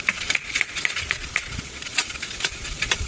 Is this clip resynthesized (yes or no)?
yes